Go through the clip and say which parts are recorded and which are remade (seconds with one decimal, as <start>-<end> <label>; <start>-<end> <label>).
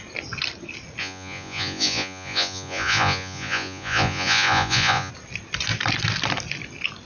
0.0-1.0 recorded; 1.0-5.1 remade; 5.1-7.1 recorded